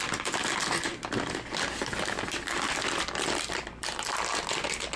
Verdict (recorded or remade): recorded